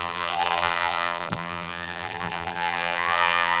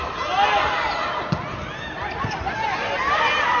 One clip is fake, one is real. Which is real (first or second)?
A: second